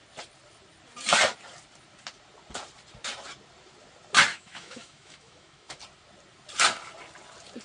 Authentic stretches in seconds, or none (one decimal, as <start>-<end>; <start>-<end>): 0.0-4.3; 5.8-7.6